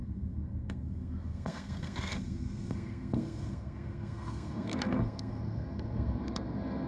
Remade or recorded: remade